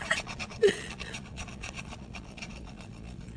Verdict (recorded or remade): remade